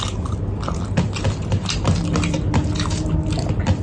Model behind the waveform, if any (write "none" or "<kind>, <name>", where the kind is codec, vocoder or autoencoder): none